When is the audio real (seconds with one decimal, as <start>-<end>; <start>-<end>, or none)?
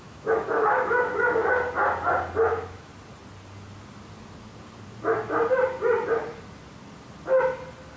1.4-2.4; 2.9-8.0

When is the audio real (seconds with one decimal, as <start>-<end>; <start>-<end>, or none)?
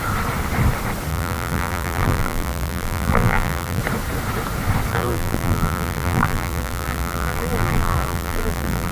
0.0-1.1; 3.8-4.9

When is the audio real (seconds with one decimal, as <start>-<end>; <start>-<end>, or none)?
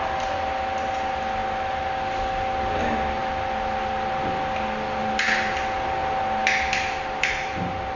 0.0-8.0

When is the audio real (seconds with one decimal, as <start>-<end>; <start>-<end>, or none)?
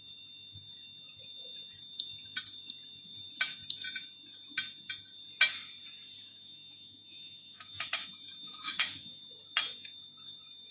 0.0-6.3; 9.2-10.7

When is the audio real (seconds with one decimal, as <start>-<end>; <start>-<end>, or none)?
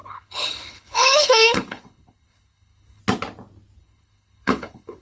3.0-3.8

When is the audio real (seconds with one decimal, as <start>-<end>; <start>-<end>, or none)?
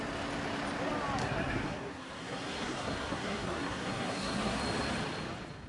0.0-1.2; 4.6-5.7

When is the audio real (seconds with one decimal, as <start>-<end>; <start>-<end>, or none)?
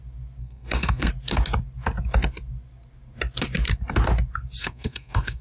0.0-0.4; 1.1-4.6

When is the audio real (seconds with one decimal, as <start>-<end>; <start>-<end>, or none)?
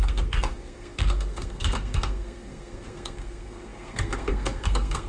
none